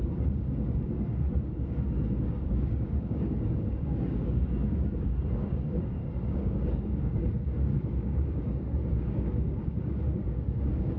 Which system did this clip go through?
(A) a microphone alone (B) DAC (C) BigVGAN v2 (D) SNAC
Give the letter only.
B